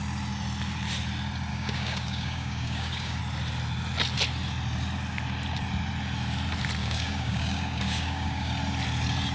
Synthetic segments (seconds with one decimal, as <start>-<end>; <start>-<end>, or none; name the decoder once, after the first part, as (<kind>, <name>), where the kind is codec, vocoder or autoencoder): 1.5-3.2 (codec, DAC); 6.8-8.5